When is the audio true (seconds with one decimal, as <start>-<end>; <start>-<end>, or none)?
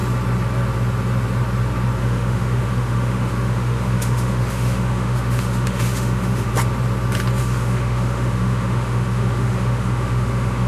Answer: 0.0-2.0; 6.5-7.4